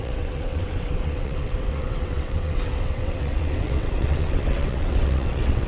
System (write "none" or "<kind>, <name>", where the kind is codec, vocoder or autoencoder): vocoder, WaveNeXt